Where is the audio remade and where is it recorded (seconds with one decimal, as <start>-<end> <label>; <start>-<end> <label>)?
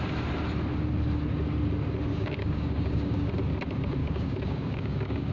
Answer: 0.0-2.1 recorded; 2.1-3.3 remade; 3.3-4.0 recorded; 4.0-5.3 remade